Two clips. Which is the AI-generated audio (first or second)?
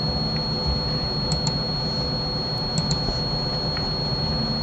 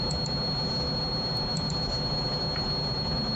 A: second